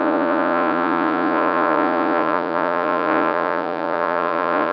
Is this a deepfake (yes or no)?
yes